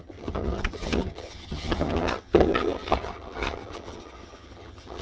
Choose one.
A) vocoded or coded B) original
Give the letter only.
A